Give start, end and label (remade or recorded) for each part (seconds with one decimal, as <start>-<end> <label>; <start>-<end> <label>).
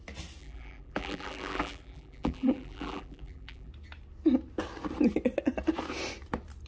0.0-0.4 recorded; 0.4-3.7 remade; 3.7-6.7 recorded